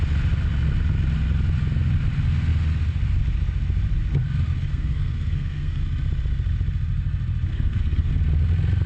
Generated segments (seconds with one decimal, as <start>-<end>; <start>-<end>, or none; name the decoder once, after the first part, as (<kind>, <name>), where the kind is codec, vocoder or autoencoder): 4.7-5.8 (codec, SNAC); 7.5-8.1